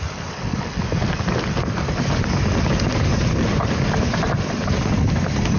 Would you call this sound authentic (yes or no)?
yes